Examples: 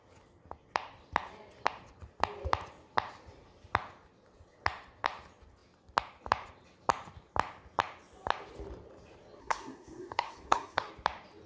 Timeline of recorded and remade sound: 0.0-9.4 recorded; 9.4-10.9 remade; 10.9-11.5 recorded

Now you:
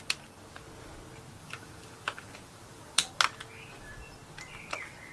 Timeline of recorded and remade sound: 0.0-1.4 recorded; 1.4-3.1 remade; 3.1-5.1 recorded

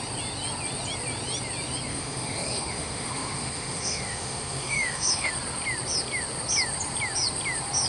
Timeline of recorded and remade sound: 0.0-1.9 recorded; 1.9-5.3 remade; 5.3-7.9 recorded